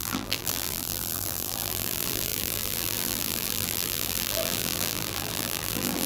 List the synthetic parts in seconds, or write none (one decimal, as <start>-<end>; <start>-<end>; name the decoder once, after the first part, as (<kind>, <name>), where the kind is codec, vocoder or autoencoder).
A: 0.0-6.1 (vocoder, BigVGAN v2)